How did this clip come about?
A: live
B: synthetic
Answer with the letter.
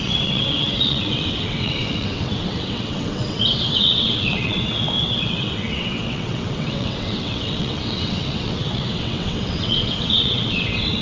B